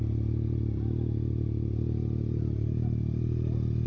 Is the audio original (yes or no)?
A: yes